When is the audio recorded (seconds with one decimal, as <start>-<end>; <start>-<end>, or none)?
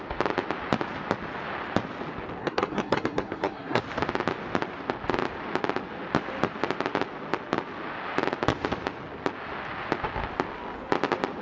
0.0-2.4; 3.8-11.4